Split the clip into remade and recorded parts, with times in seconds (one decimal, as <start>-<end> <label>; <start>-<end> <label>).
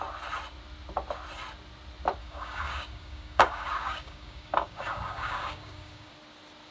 0.0-2.2 recorded; 2.2-6.1 remade; 6.1-6.7 recorded